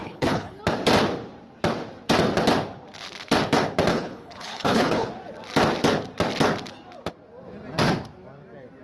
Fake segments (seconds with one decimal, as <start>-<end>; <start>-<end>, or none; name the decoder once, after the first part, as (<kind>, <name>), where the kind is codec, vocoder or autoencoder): 0.0-0.6 (codec, HILCodec); 3.9-5.1